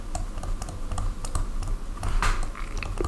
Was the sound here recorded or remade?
recorded